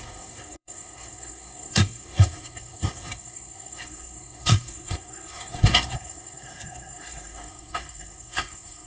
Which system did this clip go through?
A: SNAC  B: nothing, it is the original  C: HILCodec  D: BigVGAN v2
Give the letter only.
A